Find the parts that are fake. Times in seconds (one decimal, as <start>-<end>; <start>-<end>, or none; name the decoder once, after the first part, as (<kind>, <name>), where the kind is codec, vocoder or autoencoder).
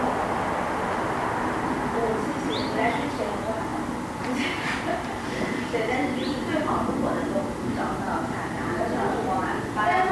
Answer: none